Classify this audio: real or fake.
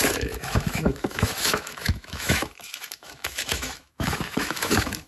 fake